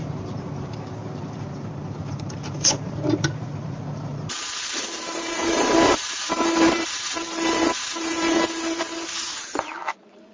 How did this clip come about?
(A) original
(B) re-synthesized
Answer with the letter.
B